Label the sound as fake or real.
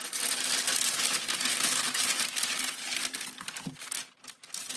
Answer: real